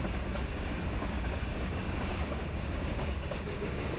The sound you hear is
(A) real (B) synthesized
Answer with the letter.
B